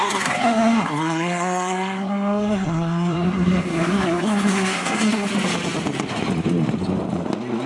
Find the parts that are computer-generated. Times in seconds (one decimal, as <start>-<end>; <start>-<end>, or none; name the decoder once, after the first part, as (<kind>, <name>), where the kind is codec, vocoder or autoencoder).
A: 0.0-5.3 (codec, SNAC)